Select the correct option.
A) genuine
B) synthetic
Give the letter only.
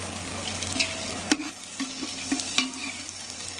B